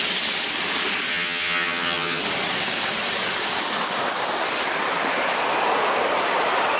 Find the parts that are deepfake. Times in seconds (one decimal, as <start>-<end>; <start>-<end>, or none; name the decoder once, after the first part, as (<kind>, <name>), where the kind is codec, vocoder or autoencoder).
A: 1.1-2.2 (vocoder, HiFi-GAN)